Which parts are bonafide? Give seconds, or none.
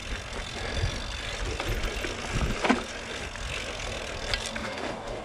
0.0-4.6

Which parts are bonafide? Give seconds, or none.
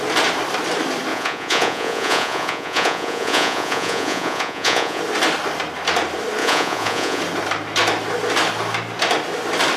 0.0-1.1; 5.0-6.4; 7.2-9.8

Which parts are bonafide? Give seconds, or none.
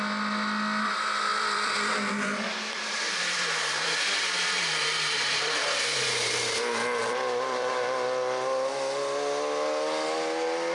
0.0-1.3; 6.0-7.0; 8.7-10.7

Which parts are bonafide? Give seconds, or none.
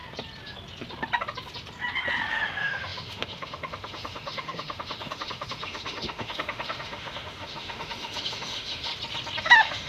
0.0-2.3; 8.9-9.4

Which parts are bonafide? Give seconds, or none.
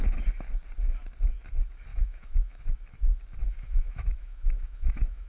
0.0-1.9; 2.6-3.4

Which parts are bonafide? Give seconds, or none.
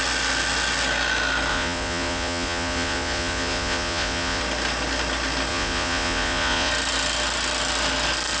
0.0-1.5; 4.4-5.5; 6.7-8.4